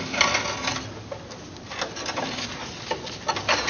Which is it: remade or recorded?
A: recorded